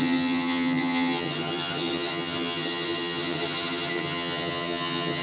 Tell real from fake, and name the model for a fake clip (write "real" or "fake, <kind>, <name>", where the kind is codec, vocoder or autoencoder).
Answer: fake, vocoder, HiFi-GAN